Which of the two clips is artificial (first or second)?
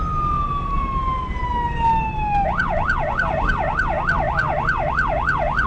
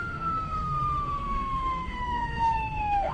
second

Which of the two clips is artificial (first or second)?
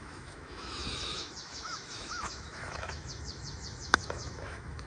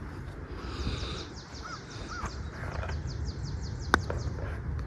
first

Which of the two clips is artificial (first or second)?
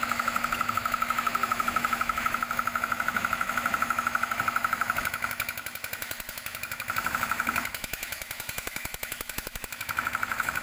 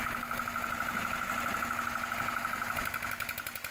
first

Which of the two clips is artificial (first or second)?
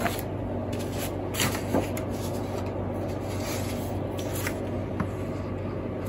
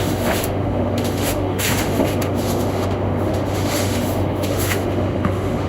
second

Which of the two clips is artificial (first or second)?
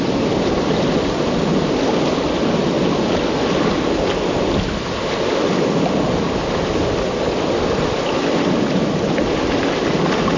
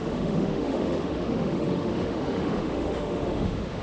second